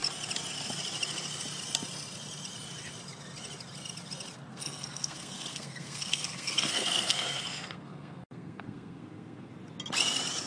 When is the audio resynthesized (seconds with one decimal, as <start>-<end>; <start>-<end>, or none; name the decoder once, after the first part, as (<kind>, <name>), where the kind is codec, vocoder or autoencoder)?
4.5-9.5 (codec, SNAC)